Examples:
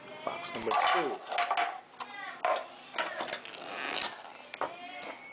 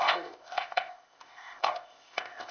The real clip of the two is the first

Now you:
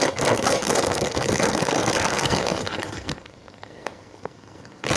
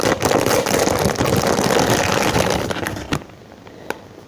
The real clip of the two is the second